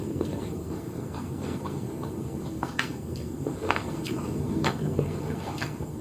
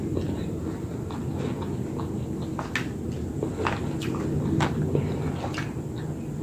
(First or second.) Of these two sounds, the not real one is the first